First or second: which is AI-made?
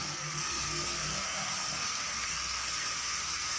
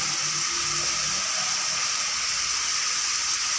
first